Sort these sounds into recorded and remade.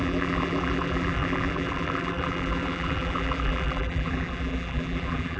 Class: remade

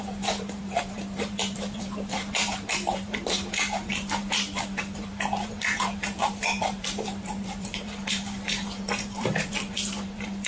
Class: remade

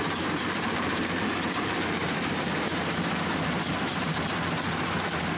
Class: remade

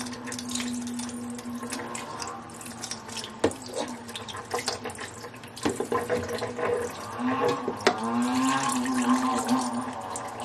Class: recorded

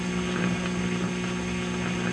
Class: recorded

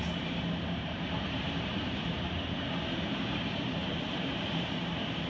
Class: remade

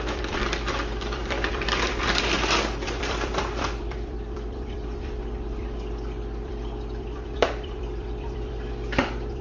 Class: remade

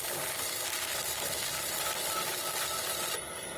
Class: remade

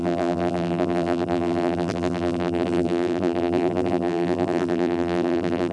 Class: remade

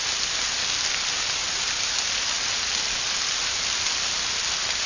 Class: recorded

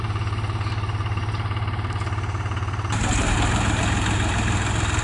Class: remade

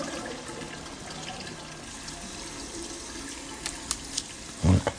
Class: recorded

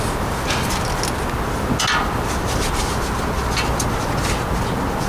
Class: recorded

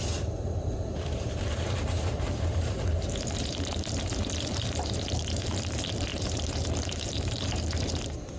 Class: remade